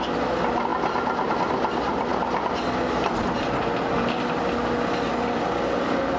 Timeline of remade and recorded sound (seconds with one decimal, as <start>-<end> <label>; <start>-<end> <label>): 0.0-6.2 recorded